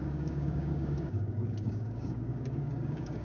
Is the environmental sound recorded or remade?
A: remade